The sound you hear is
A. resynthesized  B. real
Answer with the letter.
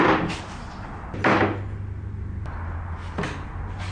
B